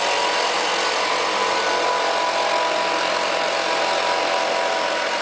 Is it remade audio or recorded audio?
recorded